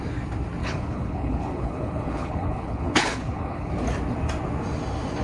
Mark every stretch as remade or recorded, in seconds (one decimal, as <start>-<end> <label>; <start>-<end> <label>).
0.0-0.6 recorded; 0.6-3.7 remade; 3.7-5.2 recorded